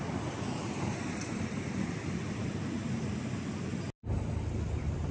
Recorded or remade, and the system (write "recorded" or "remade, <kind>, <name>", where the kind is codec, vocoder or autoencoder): recorded